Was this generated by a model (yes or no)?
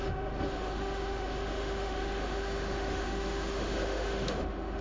yes